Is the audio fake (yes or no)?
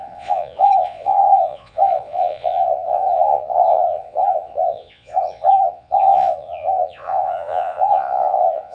yes